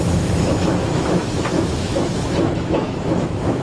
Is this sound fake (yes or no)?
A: yes